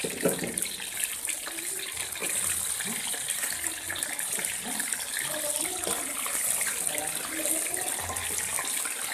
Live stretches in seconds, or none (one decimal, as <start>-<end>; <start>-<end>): 0.0-9.1